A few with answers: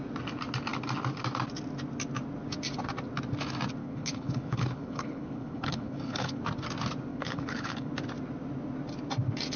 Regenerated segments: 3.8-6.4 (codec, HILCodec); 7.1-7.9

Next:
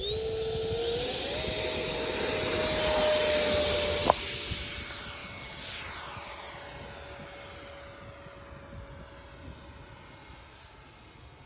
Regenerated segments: none